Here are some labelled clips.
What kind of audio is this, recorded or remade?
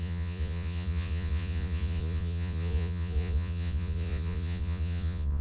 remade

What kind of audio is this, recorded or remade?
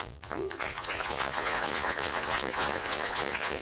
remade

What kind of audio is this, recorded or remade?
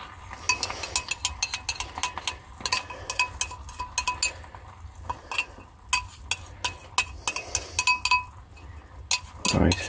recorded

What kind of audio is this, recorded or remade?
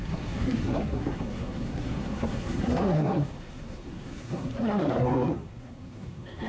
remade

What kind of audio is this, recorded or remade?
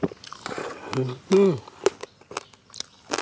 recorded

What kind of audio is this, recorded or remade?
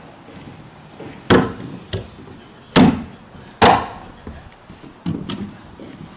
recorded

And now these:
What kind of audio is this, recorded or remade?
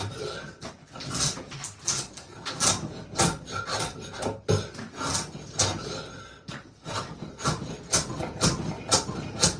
recorded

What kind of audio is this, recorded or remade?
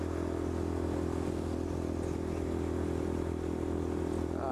recorded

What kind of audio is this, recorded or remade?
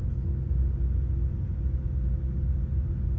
recorded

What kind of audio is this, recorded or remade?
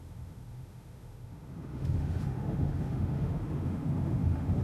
remade